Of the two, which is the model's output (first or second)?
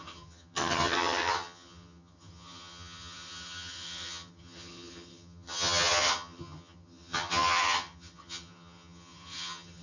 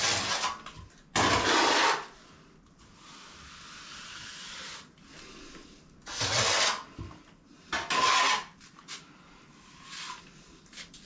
first